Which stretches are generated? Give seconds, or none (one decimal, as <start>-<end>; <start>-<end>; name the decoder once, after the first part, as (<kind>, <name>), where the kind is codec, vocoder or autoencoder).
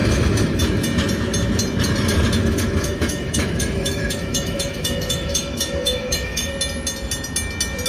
0.0-0.6 (autoencoder, DAC-VAE); 2.4-6.5